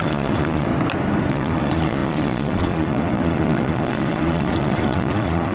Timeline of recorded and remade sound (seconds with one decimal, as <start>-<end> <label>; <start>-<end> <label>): 0.0-0.7 remade; 0.7-1.3 recorded; 1.3-5.5 remade